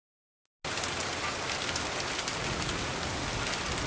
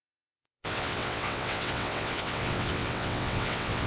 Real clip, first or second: first